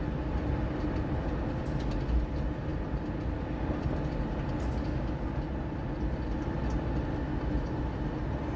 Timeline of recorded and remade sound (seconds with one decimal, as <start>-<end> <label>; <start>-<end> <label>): 0.0-8.6 recorded